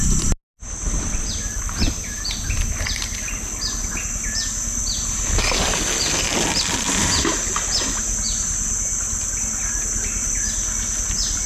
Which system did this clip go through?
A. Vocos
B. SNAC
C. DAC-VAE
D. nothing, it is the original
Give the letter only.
D